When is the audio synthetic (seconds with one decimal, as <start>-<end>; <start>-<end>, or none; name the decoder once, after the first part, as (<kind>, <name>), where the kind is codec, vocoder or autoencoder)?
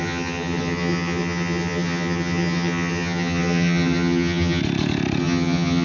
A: 0.0-4.6 (vocoder, HiFi-GAN); 5.2-5.8